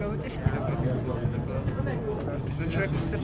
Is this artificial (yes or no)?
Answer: no